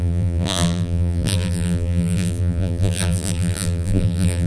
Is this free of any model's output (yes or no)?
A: no